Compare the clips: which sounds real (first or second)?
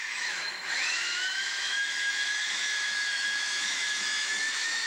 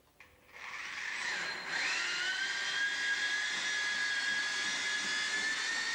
second